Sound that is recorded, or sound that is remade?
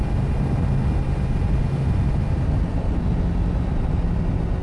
recorded